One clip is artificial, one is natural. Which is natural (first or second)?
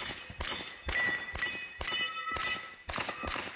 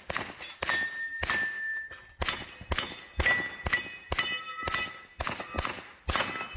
second